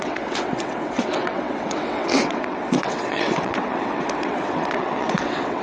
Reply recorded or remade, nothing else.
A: remade